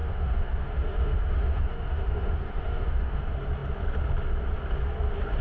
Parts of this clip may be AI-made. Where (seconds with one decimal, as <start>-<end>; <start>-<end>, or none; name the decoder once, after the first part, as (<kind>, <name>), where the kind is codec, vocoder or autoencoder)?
0.0-3.2 (autoencoder, DAC-VAE)